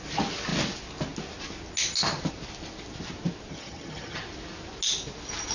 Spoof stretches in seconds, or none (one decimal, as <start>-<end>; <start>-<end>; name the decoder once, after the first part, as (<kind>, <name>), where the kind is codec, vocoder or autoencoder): 3.5-4.2 (vocoder, HiFi-GAN)